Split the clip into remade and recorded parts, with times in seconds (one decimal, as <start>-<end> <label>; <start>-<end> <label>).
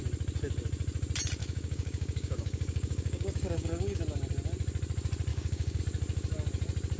0.0-1.4 recorded; 1.4-4.0 remade; 4.0-5.3 recorded; 5.3-5.8 remade; 5.8-7.0 recorded